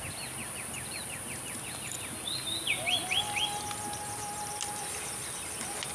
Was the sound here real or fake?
real